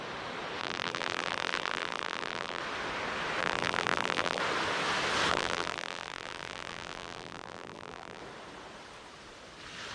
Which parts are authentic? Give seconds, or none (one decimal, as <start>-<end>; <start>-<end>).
0.0-0.6; 2.6-3.4; 4.4-5.3; 8.2-9.9